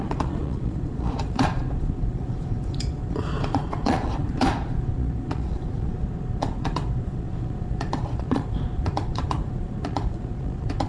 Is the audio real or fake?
fake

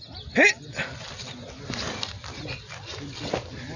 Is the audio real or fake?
real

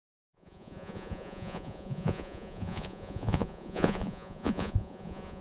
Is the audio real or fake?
fake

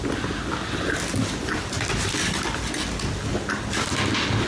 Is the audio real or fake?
real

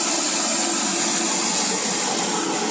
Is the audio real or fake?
real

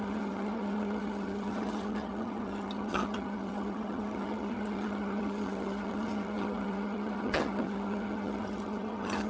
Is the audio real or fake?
fake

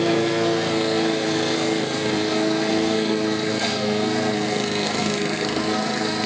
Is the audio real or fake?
fake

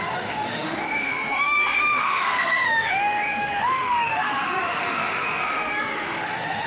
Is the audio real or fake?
fake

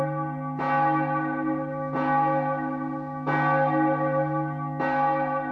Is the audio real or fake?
real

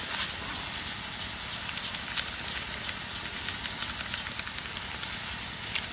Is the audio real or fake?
real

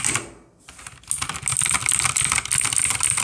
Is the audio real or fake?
real